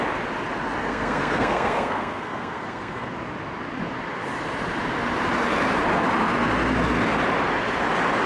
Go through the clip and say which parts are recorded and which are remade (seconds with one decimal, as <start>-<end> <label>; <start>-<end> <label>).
0.0-0.8 recorded; 0.8-3.1 remade; 3.1-8.3 recorded